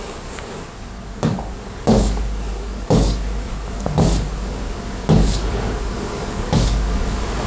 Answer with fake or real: fake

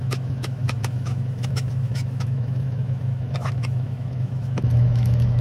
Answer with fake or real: fake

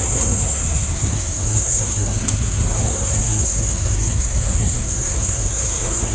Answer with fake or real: fake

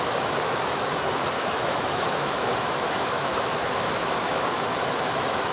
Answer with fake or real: fake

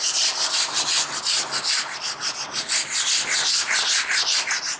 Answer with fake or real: real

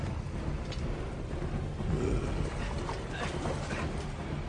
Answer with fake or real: real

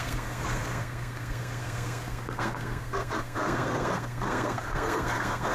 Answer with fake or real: fake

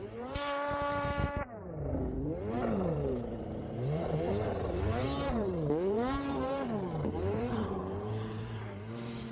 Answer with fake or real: fake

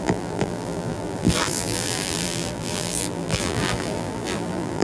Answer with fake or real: fake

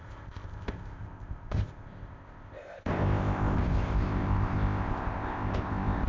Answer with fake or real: fake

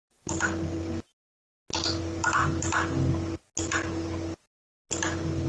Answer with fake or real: real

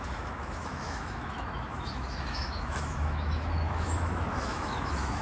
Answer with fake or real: fake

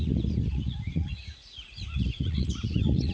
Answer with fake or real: fake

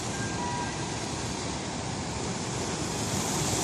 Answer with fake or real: real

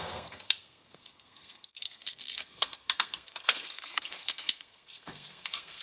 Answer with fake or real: fake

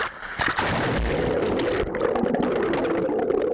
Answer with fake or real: real